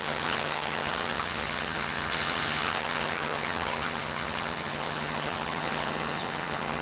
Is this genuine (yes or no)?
no